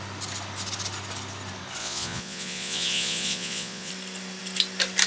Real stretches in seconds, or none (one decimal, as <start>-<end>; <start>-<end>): 0.0-1.8; 3.9-5.1